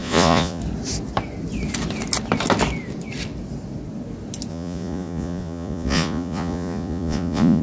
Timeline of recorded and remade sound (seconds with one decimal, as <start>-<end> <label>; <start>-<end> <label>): 0.0-0.6 remade; 0.6-4.5 recorded; 4.5-7.6 remade